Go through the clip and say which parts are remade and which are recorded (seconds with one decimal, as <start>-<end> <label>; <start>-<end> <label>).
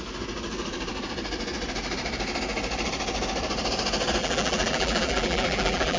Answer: 0.0-4.2 recorded; 4.2-6.0 remade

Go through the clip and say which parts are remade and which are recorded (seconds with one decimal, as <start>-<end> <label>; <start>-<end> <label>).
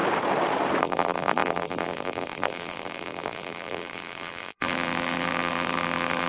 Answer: 0.0-0.8 recorded; 0.8-6.3 remade